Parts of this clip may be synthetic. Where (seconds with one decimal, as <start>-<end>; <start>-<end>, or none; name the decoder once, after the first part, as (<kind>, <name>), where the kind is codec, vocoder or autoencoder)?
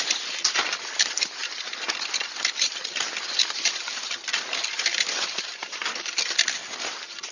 none